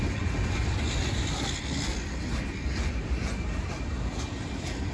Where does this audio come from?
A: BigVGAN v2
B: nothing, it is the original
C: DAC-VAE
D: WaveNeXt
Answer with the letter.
A